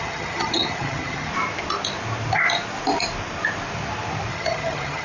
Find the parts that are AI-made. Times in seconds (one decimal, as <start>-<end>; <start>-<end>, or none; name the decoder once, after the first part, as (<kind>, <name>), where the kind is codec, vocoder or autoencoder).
0.0-1.3 (vocoder, HiFi-GAN); 4.3-5.0